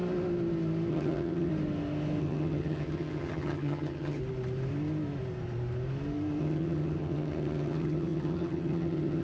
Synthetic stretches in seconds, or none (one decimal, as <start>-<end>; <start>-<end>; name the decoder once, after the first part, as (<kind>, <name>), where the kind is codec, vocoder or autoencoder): 0.9-1.5 (vocoder, HiFi-GAN); 2.2-4.2; 6.4-9.2